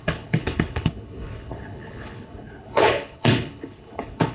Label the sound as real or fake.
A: fake